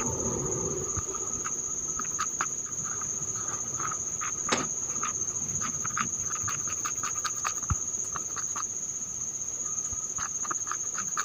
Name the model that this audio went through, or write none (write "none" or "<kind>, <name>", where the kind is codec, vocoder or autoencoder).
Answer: none